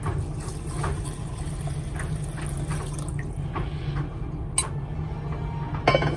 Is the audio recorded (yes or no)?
yes